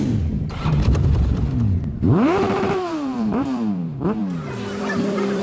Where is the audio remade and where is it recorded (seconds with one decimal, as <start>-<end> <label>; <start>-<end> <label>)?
0.0-4.2 remade; 4.2-4.8 recorded; 4.8-5.4 remade